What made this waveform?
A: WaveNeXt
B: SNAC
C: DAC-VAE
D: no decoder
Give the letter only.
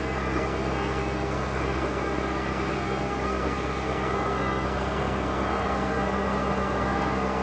B